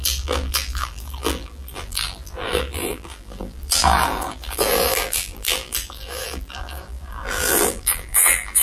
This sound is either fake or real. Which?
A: fake